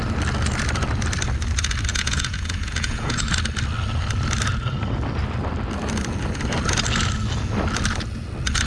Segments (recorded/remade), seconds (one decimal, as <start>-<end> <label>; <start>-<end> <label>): 0.0-1.9 recorded; 1.9-3.3 remade; 3.3-8.7 recorded